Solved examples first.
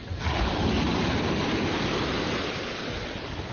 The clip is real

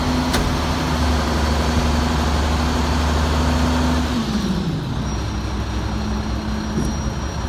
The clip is real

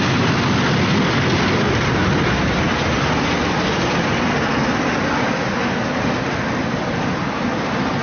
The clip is real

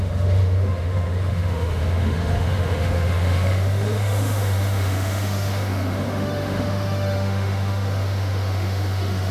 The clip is fake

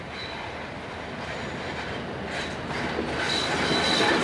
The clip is real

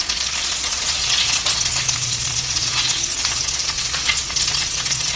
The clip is fake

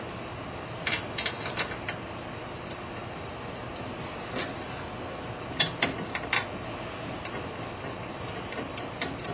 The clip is real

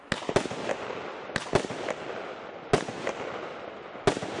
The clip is real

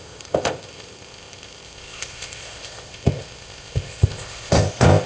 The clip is fake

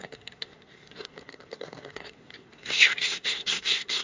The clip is fake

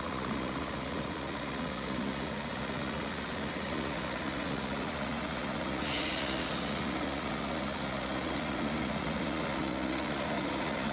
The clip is fake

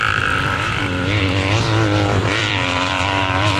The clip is fake